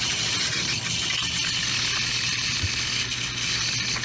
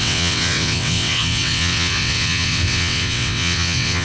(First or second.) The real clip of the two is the first